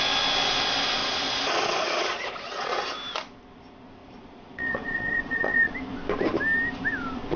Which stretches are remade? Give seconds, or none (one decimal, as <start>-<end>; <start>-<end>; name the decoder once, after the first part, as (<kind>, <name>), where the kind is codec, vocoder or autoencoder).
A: 1.0-2.8 (vocoder, Vocos); 4.0-5.7